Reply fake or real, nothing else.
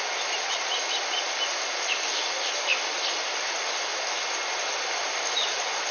real